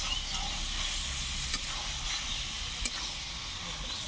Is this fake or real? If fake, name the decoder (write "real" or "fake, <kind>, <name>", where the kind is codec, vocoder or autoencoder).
real